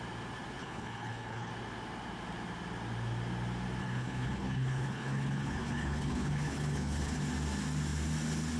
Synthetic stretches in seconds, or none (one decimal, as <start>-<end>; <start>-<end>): 0.6-1.5; 3.8-7.2

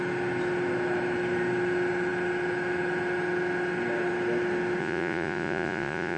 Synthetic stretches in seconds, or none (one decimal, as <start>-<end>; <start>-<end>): 4.8-6.2

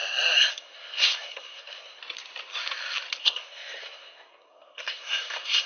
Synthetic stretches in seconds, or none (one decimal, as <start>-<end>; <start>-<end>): 0.5-2.0; 3.2-5.7

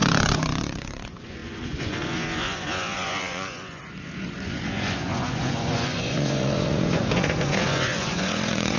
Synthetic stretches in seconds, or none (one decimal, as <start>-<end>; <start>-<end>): 0.0-8.8

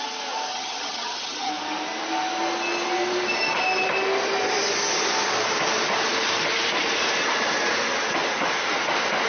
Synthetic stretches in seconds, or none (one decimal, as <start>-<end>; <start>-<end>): 0.5-1.5